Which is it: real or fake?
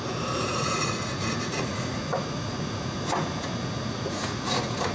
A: fake